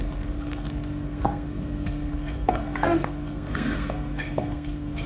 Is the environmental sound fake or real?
fake